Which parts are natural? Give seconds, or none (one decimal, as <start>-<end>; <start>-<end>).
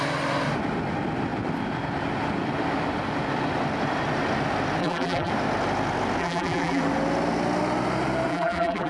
0.0-4.8; 5.3-6.2; 6.8-8.3